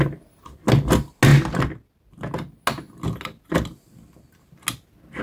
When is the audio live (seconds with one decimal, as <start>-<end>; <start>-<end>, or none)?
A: 0.0-5.2